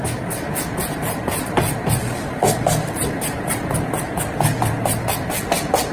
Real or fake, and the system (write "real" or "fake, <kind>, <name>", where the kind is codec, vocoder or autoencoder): fake, vocoder, BigVGAN v2